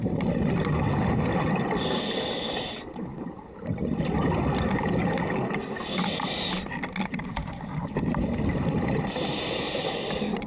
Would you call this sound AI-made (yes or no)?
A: no